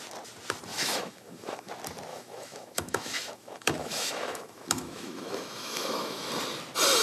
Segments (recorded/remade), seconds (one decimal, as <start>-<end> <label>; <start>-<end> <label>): 0.0-0.7 recorded; 0.7-1.7 remade; 1.7-2.1 recorded; 2.1-6.3 remade; 6.3-7.0 recorded